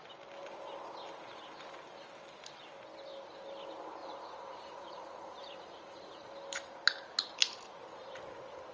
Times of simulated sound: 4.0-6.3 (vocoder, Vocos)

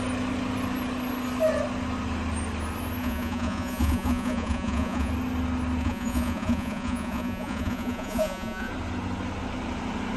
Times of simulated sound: 3.0-5.1 (vocoder, Vocos); 5.8-8.7

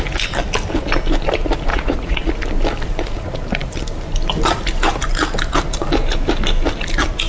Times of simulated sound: 1.7-2.3 (vocoder, Vocos)

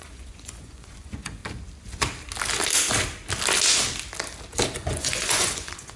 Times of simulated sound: 0.0-1.4 (vocoder, Vocos); 4.7-6.0